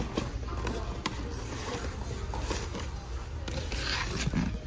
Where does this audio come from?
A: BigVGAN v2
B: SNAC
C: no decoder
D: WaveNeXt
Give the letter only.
C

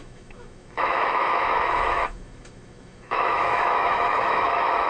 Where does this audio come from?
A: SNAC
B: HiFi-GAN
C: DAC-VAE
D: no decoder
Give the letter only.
C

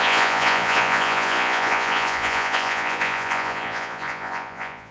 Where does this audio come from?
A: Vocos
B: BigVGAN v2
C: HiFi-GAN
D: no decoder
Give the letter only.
A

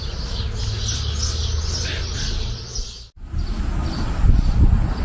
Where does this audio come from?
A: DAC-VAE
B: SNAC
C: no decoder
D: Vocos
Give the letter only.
C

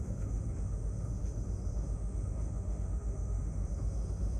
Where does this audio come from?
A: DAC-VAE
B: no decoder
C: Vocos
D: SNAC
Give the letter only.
A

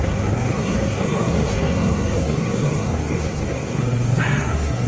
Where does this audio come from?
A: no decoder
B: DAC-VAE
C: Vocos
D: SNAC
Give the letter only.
D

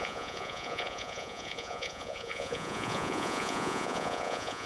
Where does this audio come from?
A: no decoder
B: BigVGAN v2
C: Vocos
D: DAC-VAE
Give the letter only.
C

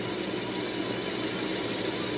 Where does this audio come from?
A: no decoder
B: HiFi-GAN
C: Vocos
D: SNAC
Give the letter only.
A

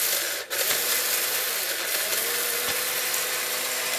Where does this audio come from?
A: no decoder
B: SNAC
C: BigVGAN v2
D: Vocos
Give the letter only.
A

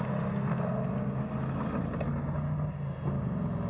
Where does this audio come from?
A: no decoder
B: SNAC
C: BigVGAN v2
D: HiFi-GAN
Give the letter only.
A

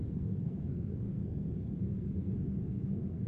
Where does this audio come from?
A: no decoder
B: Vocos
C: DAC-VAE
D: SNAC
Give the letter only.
D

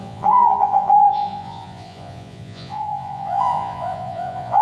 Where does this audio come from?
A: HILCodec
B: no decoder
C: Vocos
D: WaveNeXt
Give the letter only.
C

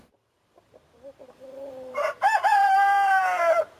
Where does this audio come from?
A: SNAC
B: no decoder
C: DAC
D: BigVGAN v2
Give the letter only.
D